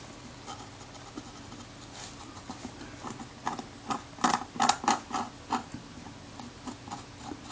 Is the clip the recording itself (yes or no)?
yes